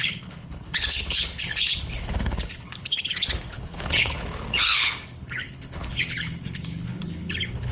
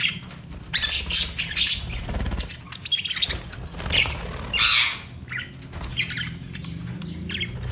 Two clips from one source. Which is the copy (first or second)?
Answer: first